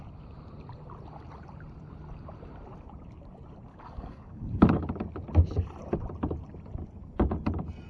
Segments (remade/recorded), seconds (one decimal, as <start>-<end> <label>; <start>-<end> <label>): 0.0-3.7 recorded; 3.7-4.8 remade; 4.8-7.9 recorded